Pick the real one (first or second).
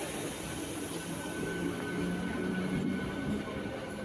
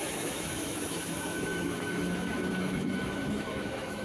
first